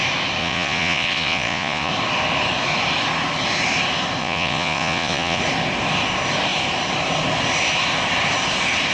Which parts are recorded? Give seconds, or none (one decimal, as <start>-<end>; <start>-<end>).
0.0-0.4; 1.9-4.2; 5.4-8.9